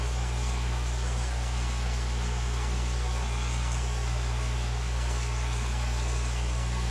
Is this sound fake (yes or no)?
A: yes